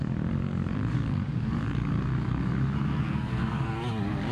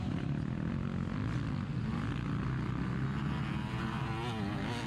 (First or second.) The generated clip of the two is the first